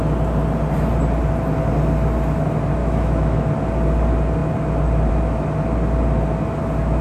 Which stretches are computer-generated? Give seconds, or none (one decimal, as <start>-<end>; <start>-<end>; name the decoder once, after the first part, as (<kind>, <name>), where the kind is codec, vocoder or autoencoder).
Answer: 2.8-3.5 (autoencoder, DAC-VAE)